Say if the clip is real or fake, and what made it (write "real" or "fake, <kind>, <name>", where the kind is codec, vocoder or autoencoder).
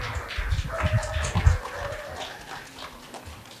real